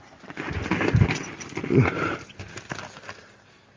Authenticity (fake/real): real